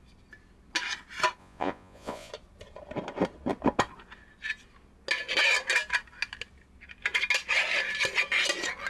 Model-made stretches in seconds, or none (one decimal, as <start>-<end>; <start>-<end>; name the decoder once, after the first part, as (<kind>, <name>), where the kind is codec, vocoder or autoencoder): 1.4-2.3 (vocoder, Vocos)